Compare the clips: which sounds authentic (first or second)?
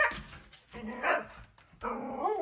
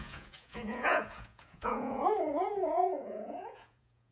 first